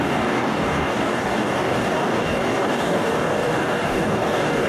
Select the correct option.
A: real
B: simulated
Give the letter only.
B